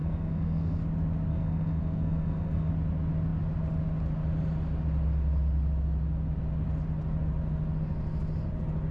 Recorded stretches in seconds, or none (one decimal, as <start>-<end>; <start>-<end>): 0.8-1.3; 2.7-8.9

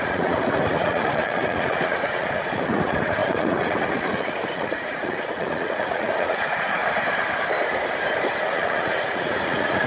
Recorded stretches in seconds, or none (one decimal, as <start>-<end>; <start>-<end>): 6.8-8.4